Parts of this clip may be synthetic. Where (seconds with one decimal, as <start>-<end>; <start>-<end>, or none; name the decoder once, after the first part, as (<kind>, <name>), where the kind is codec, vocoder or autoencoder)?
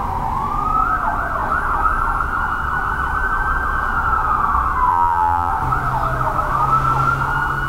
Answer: 4.9-5.5 (vocoder, BigVGAN v2)